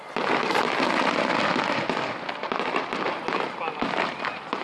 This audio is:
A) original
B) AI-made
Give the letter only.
A